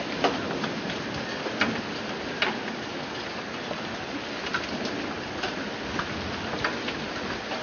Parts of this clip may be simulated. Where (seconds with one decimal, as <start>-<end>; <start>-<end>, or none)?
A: none